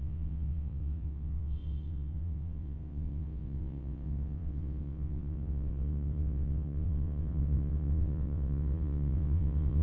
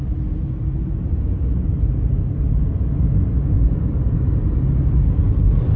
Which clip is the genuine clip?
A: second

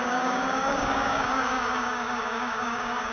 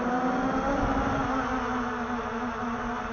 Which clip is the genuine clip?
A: second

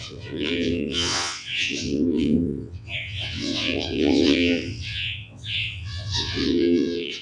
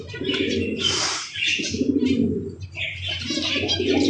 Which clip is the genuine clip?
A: second